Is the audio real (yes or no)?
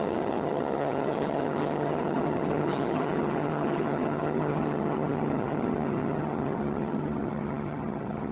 no